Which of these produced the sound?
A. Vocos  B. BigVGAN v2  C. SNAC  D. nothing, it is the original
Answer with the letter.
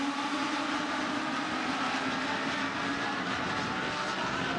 D